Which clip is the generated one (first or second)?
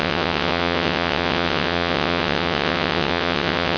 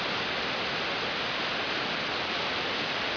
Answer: first